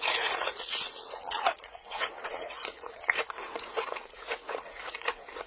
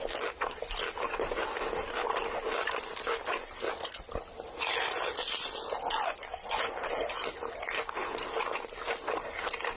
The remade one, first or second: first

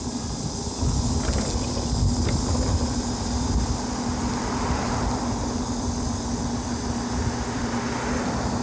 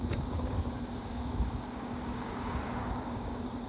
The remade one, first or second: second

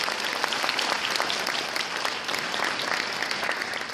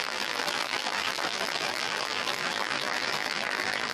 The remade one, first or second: second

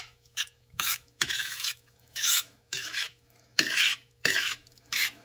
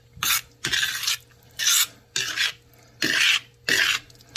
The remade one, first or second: first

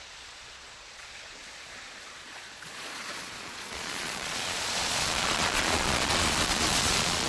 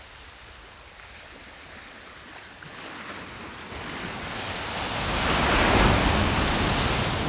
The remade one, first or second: first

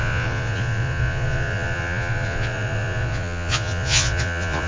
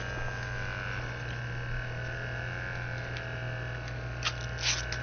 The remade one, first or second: first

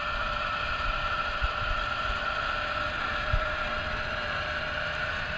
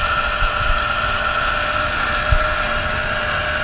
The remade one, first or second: first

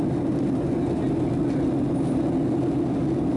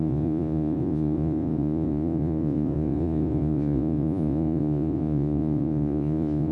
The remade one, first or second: second